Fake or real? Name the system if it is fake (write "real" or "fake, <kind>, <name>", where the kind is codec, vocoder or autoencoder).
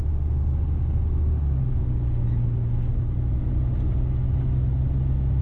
real